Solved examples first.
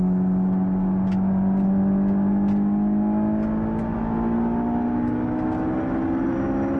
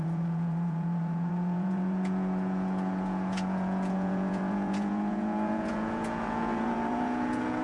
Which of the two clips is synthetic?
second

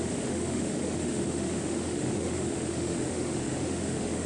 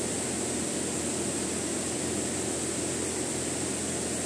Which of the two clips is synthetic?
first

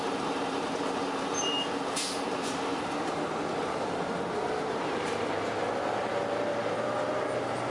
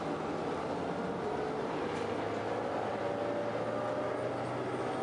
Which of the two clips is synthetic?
first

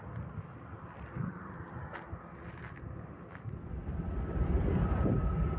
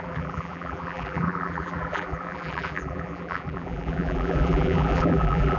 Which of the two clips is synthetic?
second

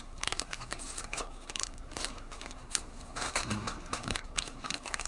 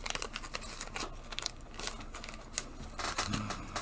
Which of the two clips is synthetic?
first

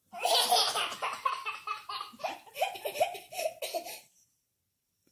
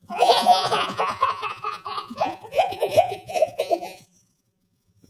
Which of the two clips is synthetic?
second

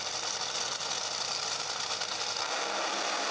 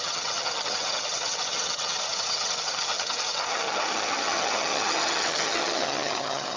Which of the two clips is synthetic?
second